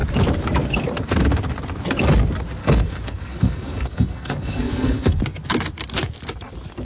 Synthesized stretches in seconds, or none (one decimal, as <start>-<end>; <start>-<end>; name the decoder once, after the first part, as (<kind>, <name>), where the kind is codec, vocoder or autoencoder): 2.6-5.2 (codec, SNAC)